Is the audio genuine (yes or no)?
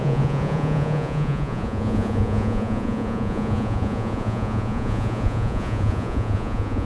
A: no